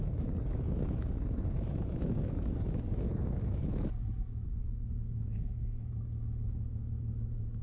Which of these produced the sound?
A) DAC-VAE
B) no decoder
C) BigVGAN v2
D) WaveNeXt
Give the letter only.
A